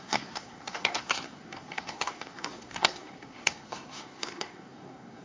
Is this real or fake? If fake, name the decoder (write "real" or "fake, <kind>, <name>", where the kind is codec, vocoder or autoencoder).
fake, codec, SNAC